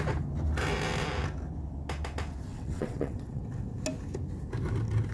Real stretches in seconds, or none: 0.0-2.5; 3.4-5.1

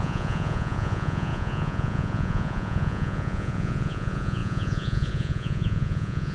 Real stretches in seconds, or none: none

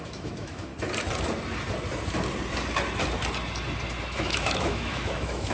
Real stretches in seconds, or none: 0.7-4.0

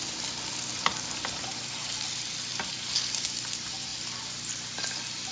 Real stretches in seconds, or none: 0.0-5.3

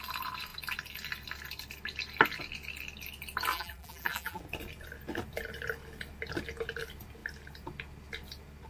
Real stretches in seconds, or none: 0.0-3.5; 4.4-8.7